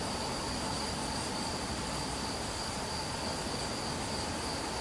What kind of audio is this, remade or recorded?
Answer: recorded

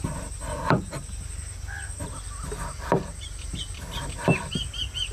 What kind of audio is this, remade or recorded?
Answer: recorded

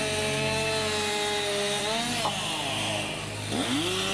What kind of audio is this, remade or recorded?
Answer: recorded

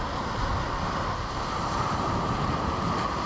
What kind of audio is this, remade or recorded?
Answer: recorded